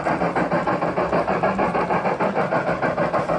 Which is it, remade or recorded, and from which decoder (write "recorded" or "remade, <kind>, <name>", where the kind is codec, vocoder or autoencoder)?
recorded